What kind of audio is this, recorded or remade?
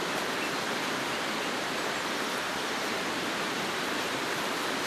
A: recorded